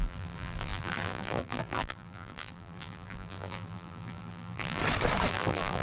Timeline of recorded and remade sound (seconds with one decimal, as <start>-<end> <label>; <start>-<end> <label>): 0.0-4.8 remade; 4.8-5.3 recorded; 5.3-5.8 remade